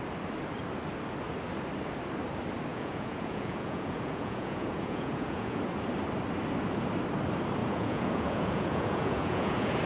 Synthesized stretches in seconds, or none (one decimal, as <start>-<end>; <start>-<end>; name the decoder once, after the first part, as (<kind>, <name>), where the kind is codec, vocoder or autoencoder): 2.7-5.7 (vocoder, Vocos); 7.6-9.8